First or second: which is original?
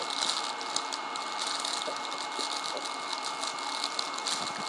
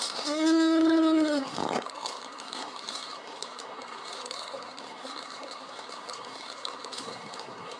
first